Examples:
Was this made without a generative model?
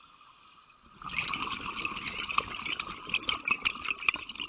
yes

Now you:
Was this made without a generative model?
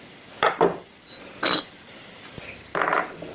yes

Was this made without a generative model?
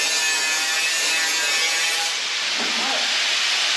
yes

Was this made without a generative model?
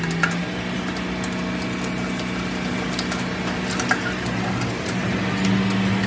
yes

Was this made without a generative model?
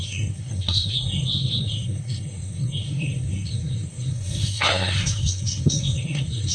no